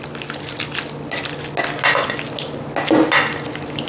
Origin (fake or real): real